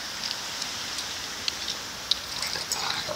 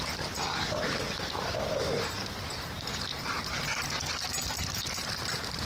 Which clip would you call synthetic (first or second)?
second